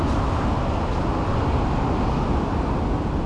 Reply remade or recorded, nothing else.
recorded